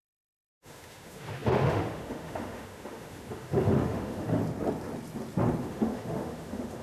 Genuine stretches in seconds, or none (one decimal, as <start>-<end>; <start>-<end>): 4.4-5.6